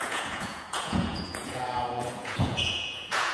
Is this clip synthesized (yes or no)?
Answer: yes